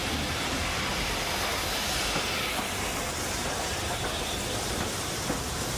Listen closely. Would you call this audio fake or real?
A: real